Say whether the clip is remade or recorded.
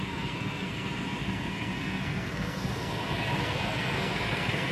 remade